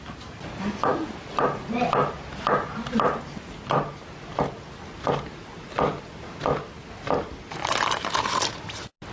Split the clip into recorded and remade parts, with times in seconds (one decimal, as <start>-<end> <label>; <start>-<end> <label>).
0.0-9.1 recorded